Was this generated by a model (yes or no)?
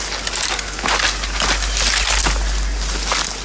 no